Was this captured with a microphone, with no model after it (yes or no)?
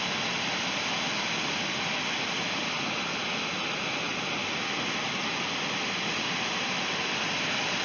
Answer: yes